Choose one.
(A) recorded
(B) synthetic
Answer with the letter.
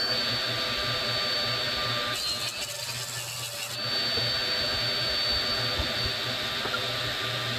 A